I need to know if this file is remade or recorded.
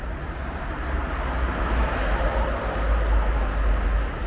recorded